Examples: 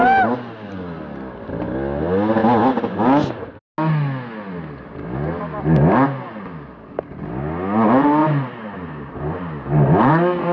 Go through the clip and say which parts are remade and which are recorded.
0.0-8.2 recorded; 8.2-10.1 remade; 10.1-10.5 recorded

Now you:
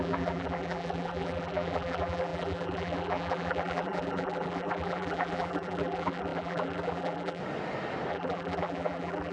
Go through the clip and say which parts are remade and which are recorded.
0.0-7.4 remade; 7.4-8.1 recorded; 8.1-9.3 remade

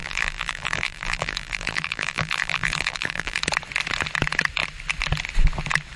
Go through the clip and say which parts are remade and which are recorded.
0.0-3.4 remade; 3.4-6.0 recorded